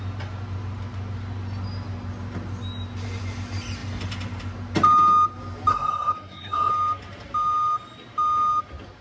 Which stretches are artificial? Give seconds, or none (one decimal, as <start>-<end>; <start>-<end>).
5.7-6.7

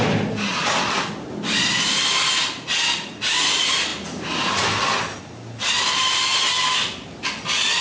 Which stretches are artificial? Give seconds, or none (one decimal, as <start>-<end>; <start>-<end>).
none

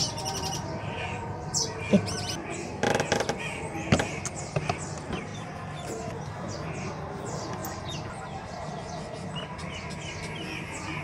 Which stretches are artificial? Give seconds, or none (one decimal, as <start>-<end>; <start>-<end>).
none

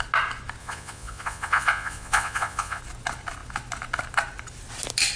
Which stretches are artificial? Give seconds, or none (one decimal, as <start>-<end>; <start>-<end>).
0.6-2.8

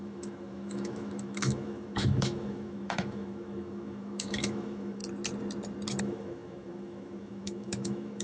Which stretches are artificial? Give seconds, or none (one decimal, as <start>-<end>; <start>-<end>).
0.0-5.0; 6.0-8.2

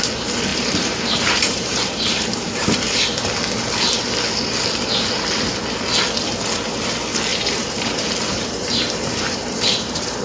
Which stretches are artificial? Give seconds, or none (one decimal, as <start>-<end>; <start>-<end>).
0.5-2.7; 7.3-10.2